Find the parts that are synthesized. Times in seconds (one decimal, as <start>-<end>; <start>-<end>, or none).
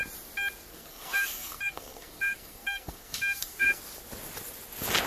0.7-3.8